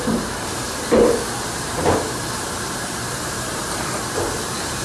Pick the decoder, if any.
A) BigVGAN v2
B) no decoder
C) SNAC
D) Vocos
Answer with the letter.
A